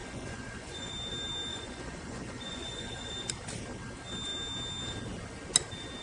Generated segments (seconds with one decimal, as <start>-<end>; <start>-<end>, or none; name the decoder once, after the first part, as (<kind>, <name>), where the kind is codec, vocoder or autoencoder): 0.0-0.9 (vocoder, Vocos); 1.5-3.1